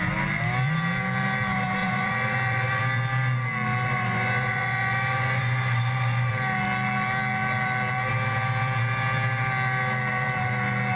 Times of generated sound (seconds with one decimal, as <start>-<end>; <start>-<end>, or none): 1.8-2.8; 3.9-6.3